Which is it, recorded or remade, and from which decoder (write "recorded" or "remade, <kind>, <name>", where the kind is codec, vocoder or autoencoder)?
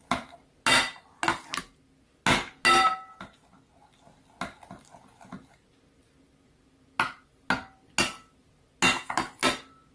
recorded